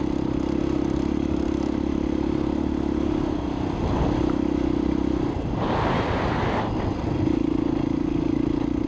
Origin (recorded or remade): recorded